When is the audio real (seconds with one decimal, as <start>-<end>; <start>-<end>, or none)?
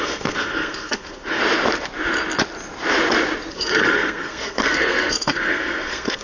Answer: 1.4-3.5